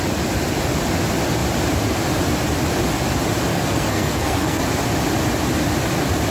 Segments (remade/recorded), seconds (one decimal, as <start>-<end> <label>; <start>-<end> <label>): 0.0-3.5 recorded; 3.5-4.6 remade; 4.6-6.3 recorded